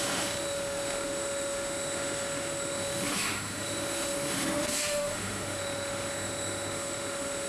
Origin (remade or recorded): remade